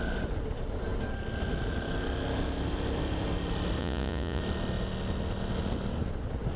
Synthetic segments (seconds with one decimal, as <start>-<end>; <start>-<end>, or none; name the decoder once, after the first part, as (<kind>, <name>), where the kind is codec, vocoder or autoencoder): 3.8-4.4 (vocoder, Vocos)